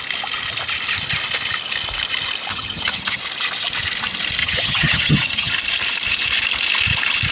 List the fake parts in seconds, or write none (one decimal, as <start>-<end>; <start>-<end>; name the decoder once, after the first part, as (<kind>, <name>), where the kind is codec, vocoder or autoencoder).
2.5-3.2 (vocoder, HiFi-GAN); 4.4-5.5